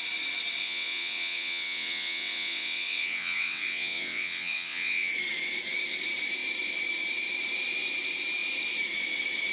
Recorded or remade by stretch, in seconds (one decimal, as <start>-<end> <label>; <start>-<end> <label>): 0.0-0.6 recorded; 0.6-5.1 remade; 5.1-9.5 recorded